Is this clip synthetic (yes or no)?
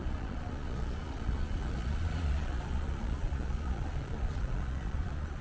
yes